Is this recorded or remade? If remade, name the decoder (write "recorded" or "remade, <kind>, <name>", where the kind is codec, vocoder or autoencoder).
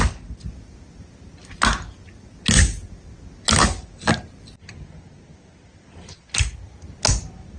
recorded